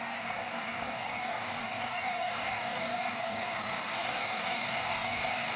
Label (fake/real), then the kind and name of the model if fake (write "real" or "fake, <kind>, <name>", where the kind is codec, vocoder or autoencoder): fake, codec, DAC